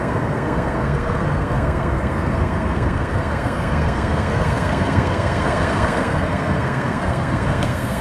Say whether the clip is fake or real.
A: fake